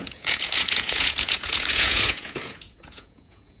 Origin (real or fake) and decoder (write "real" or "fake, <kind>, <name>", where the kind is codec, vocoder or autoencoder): fake, vocoder, Vocos